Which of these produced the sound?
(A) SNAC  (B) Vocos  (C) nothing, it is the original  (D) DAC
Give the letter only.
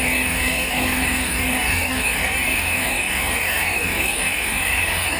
D